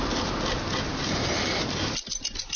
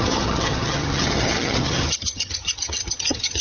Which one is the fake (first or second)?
second